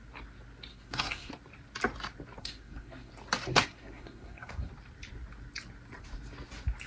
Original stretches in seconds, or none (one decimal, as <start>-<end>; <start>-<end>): 0.0-0.7; 1.3-2.4; 3.1-3.5; 4.7-6.9